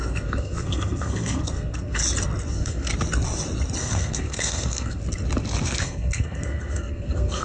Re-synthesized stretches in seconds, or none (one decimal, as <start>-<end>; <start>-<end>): 0.0-2.0; 2.5-2.9; 3.8-5.0; 5.8-7.4